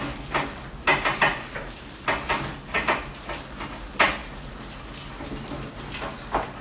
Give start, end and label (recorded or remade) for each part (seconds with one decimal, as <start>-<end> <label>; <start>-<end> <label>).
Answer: 0.0-6.6 recorded